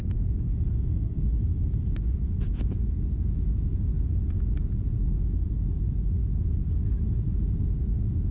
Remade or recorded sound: remade